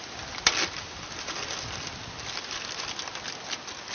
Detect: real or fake real